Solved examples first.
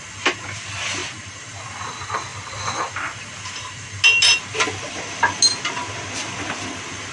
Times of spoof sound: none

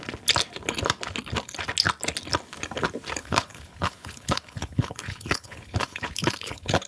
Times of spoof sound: 3.2-6.9 (codec, HILCodec)

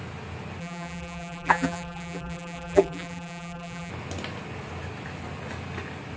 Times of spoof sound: 0.6-3.9 (vocoder, BigVGAN v2)

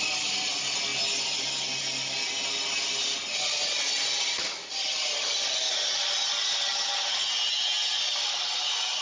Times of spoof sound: none

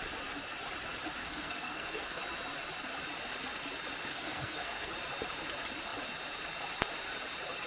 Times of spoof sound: 1.2-2.2 (codec, SNAC); 4.1-4.9

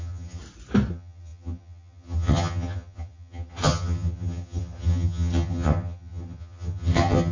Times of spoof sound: 0.0-0.4 (vocoder, HiFi-GAN); 0.9-7.3